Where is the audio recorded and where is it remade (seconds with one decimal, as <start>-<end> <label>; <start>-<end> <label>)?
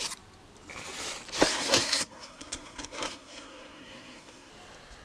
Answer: 0.0-1.5 recorded; 1.5-4.5 remade; 4.5-5.0 recorded